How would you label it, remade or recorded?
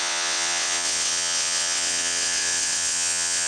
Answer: remade